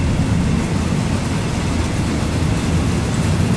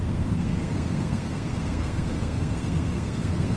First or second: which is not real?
second